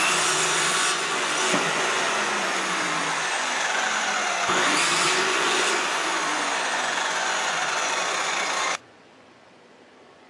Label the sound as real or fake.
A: fake